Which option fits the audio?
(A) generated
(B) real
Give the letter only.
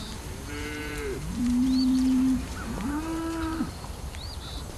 A